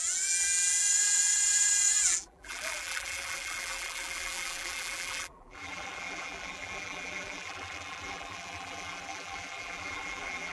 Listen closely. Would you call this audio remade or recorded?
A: remade